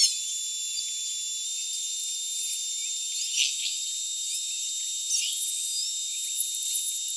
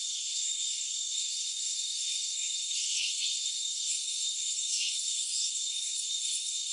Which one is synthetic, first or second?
second